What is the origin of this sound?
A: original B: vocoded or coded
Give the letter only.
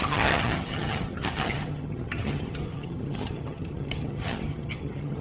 B